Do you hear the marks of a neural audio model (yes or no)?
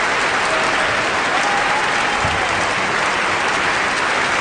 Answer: no